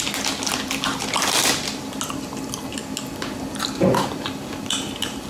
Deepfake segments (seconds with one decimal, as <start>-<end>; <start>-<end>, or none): none